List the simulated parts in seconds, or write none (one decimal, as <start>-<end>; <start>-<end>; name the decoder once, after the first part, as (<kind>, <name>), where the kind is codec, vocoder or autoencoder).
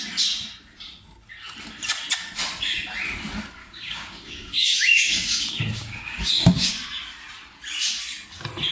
3.6-6.7 (codec, DAC)